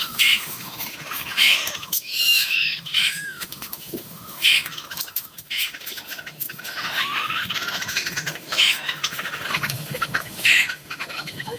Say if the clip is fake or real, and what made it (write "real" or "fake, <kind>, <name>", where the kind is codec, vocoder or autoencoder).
fake, autoencoder, DAC-VAE